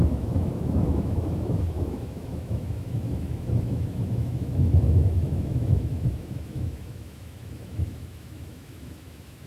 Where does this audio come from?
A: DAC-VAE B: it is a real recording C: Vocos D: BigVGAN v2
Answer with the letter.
A